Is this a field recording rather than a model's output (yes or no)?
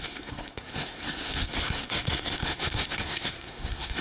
no